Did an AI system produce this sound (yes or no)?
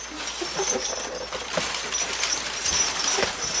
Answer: no